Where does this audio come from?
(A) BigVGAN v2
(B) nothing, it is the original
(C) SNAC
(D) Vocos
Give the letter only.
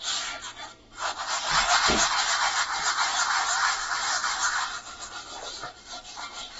B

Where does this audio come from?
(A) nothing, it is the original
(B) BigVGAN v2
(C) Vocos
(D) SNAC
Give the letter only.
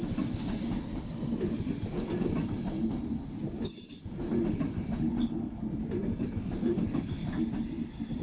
A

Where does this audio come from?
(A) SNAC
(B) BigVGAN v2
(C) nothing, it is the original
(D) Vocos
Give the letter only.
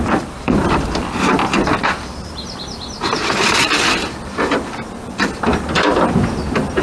B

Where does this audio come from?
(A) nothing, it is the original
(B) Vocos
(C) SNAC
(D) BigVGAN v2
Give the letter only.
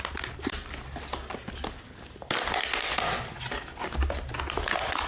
A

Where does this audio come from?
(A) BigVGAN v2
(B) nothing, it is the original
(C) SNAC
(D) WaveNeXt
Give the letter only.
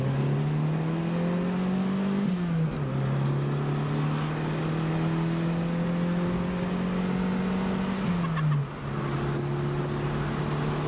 B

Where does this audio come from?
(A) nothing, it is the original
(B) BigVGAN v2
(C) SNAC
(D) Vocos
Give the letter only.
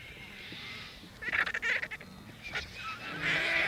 A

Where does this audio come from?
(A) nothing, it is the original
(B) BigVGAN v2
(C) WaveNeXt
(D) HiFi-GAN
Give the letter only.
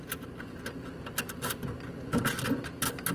A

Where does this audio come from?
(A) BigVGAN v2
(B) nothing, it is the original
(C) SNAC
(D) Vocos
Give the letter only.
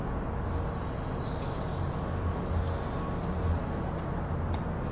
B